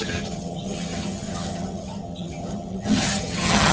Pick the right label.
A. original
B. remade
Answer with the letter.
B